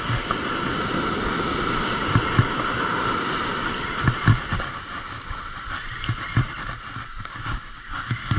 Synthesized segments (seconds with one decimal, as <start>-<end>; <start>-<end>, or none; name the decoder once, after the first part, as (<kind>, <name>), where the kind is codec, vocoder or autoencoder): 7.1-8.4 (codec, DAC)